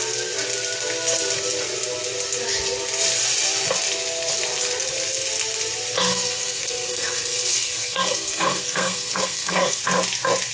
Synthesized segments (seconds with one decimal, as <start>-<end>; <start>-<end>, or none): 6.1-9.8